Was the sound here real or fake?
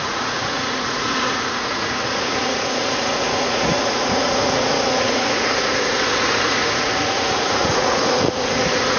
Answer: fake